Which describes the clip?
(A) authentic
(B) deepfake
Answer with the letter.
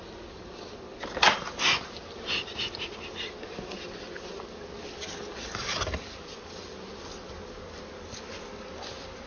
A